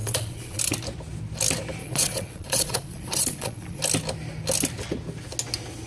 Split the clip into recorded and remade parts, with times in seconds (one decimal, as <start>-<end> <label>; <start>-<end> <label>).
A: 0.0-0.6 remade; 0.6-1.8 recorded; 1.8-3.8 remade; 3.8-5.9 recorded